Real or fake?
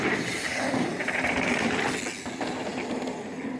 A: real